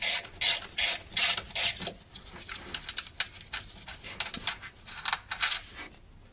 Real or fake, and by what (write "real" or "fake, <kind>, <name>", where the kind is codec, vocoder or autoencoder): real